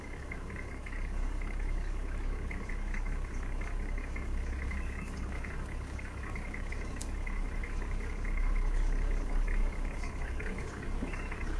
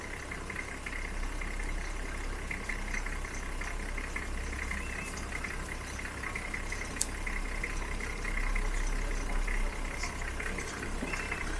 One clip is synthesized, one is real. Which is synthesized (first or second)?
first